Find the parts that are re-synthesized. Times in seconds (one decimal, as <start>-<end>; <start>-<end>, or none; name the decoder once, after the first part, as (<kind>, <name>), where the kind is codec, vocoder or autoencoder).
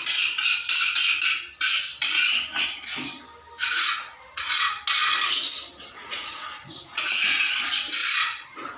3.6-4.8 (vocoder, Vocos); 5.9-7.5; 8.0-8.8